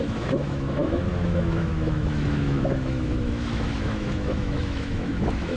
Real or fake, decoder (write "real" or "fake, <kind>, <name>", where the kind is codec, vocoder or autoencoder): fake, autoencoder, DAC-VAE